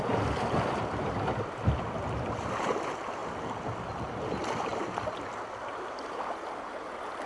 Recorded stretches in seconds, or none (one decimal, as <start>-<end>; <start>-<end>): 0.0-7.3